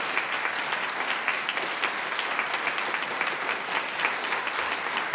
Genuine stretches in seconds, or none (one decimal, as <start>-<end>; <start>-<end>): 0.0-5.1

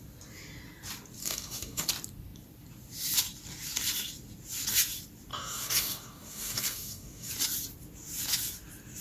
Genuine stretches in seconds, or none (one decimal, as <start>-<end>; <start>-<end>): 0.0-1.2; 1.9-5.3; 7.3-9.0

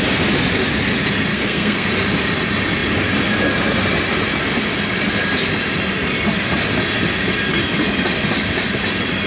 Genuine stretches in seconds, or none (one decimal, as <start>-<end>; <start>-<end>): 0.0-1.3; 1.9-9.3

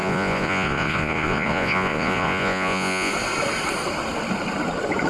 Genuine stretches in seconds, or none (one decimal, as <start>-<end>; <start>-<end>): 3.1-5.1